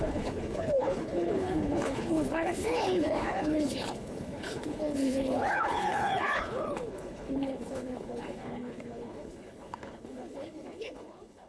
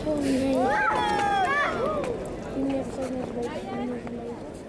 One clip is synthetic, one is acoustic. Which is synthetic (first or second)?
first